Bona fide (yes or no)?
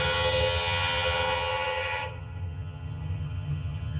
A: no